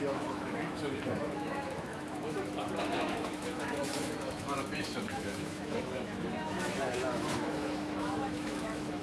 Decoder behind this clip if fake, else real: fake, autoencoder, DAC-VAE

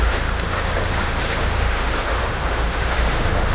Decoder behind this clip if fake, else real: fake, autoencoder, DAC-VAE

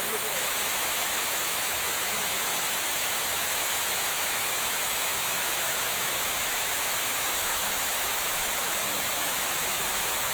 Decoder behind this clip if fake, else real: fake, autoencoder, DAC-VAE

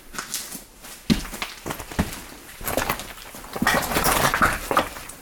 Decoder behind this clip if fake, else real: real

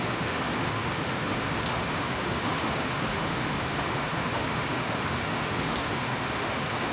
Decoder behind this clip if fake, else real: fake, autoencoder, DAC-VAE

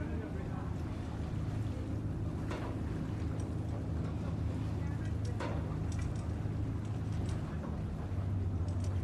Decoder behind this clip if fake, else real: real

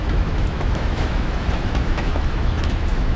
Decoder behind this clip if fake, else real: fake, autoencoder, DAC-VAE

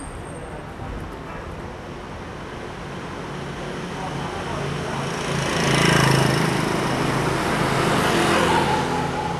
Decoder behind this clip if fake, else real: real